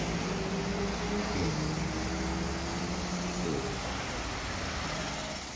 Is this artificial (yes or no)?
no